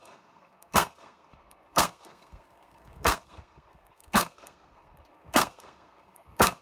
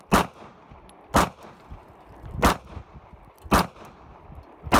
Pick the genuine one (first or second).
second